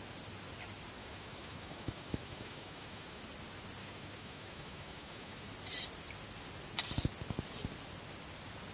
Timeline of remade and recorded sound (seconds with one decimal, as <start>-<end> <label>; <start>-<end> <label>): 0.0-1.0 recorded; 1.0-3.2 remade; 3.2-3.8 recorded; 3.8-5.5 remade; 5.5-8.7 recorded